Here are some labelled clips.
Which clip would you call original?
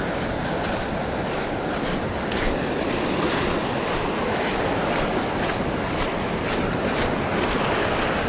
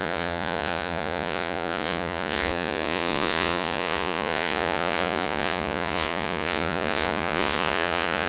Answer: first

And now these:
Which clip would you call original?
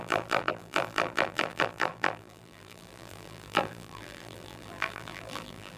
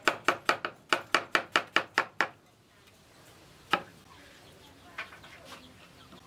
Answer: second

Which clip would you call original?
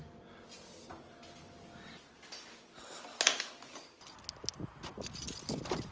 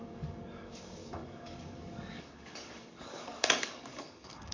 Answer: first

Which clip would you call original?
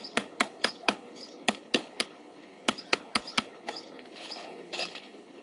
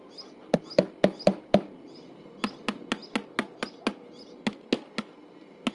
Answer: second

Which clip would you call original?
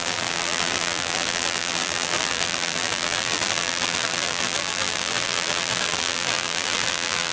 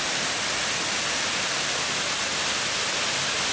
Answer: second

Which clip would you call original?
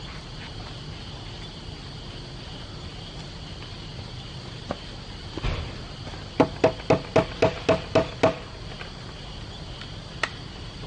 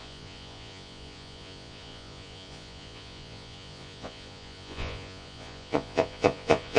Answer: first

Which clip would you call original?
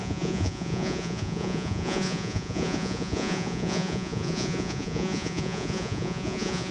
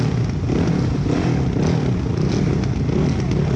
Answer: second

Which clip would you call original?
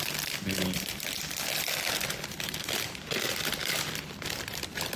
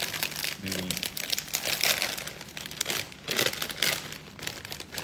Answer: second